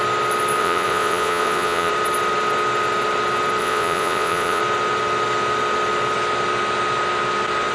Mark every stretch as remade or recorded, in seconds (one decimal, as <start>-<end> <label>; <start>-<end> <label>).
0.0-0.6 recorded; 0.6-1.9 remade; 1.9-3.6 recorded; 3.6-4.6 remade; 4.6-7.7 recorded

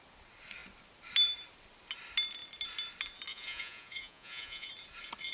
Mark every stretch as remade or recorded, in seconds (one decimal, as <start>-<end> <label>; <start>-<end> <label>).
0.0-3.3 recorded; 3.3-4.7 remade; 4.7-5.3 recorded

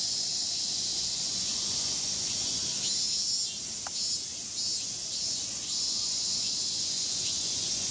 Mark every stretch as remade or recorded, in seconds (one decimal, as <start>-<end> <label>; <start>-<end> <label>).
0.0-2.6 remade; 2.6-4.8 recorded; 4.8-7.9 remade

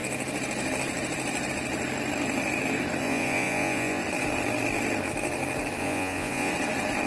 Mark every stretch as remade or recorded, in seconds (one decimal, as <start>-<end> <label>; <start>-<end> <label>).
0.0-3.0 recorded; 3.0-4.0 remade; 4.0-5.8 recorded; 5.8-6.5 remade; 6.5-7.1 recorded

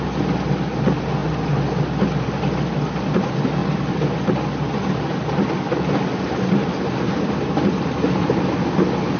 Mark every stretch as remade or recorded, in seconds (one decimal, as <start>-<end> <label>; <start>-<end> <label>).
0.0-9.2 recorded